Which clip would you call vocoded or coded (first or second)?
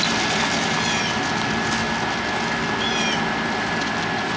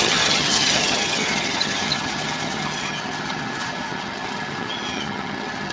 second